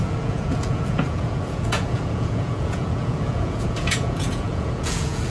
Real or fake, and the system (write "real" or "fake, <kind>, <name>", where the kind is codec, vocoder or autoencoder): fake, vocoder, Vocos